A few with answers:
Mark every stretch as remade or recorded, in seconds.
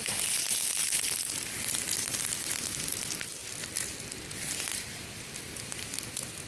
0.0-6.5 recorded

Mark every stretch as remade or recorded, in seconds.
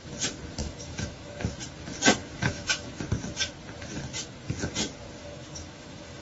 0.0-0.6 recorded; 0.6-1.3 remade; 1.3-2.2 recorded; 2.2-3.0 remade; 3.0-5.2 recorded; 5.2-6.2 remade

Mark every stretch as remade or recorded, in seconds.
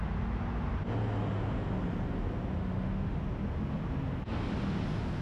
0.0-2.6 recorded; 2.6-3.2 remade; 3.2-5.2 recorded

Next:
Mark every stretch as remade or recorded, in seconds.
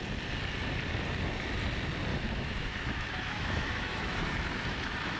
0.0-2.1 recorded; 2.1-5.2 remade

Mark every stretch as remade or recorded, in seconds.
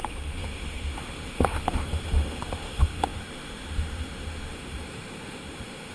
0.0-5.9 remade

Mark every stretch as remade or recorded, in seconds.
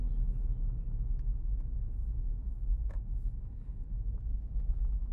0.0-5.1 remade